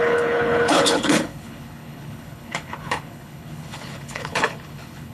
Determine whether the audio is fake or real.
fake